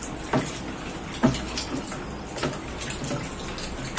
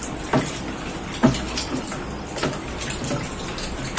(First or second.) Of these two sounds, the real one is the first